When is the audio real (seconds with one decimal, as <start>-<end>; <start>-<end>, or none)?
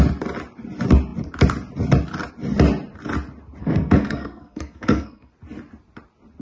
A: 0.0-3.6; 5.3-6.4